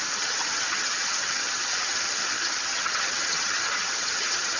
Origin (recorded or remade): remade